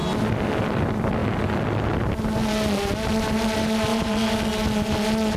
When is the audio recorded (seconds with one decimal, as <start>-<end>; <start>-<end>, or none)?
0.0-3.9; 4.4-5.4